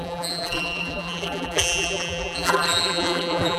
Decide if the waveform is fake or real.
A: fake